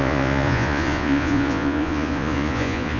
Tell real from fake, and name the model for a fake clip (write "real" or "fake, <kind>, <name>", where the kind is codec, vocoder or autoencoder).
fake, vocoder, Vocos